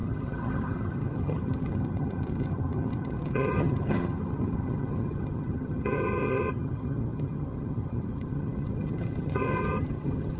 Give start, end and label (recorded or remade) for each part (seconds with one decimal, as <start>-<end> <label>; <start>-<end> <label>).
0.0-10.4 remade